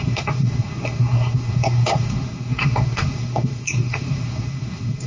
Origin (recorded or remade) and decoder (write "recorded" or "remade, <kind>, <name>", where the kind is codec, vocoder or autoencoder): remade, codec, SNAC